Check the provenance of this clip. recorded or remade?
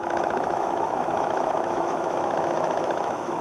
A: remade